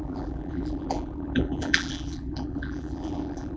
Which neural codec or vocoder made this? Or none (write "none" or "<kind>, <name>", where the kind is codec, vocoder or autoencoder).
vocoder, BigVGAN v2